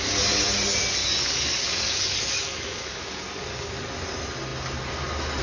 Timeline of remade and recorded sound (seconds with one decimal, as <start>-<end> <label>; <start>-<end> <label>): 0.0-1.0 recorded; 1.0-3.7 remade; 3.7-5.4 recorded